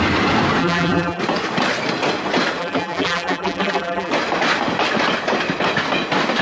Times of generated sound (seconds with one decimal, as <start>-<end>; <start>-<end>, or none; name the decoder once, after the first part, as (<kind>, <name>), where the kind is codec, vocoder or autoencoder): 0.6-1.2 (vocoder, BigVGAN v2); 2.6-4.1